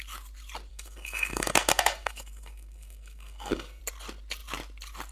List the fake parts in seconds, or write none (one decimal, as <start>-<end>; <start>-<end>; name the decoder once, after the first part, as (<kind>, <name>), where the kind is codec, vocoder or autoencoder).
0.7-3.8 (codec, SNAC)